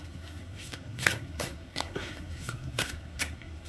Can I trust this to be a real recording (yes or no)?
no